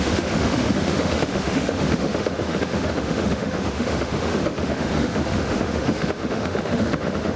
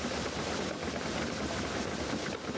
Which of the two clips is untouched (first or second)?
second